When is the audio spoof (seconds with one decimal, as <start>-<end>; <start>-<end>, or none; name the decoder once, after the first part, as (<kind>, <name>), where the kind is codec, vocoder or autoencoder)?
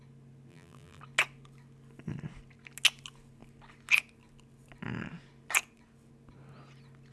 0.5-1.0 (vocoder, BigVGAN v2)